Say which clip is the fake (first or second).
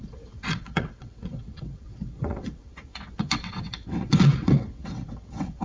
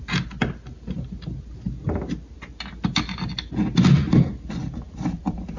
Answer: first